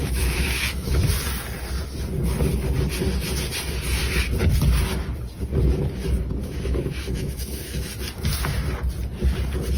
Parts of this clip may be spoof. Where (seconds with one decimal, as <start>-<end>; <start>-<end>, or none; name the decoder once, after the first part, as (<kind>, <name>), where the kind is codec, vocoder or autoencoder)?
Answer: 0.0-0.9 (autoencoder, DAC-VAE); 6.4-7.9